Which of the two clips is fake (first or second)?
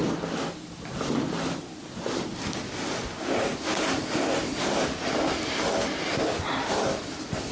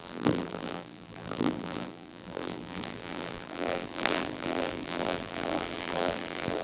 second